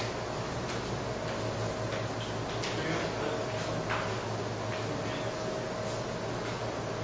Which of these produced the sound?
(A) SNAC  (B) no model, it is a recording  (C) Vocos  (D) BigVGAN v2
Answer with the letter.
B